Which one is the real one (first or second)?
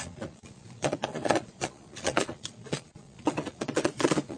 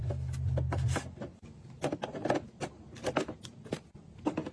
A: second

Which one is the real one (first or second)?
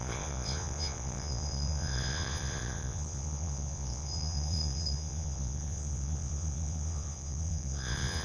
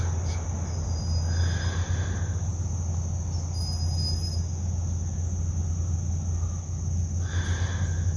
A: second